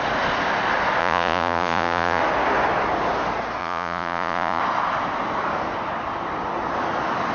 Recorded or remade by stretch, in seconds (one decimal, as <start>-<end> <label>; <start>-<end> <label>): 0.0-1.0 recorded; 1.0-2.2 remade; 2.2-3.6 recorded; 3.6-4.6 remade; 4.6-7.3 recorded